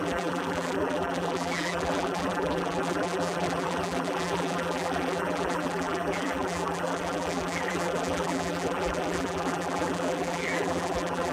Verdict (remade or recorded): remade